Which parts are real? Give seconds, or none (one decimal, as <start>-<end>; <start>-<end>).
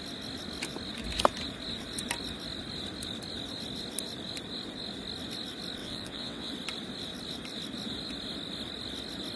0.0-5.8; 6.5-9.4